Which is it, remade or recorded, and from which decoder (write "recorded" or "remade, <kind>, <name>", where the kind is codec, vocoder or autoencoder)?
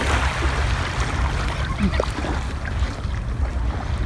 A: recorded